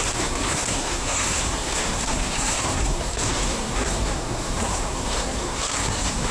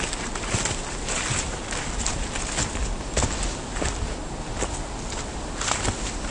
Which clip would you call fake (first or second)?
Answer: first